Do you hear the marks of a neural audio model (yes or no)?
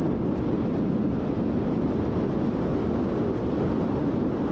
no